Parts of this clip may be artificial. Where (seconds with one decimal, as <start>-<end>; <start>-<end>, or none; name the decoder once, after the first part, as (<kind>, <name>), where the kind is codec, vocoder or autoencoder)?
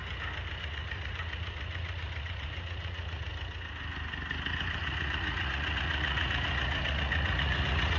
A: 0.6-3.3 (vocoder, Vocos); 4.8-8.0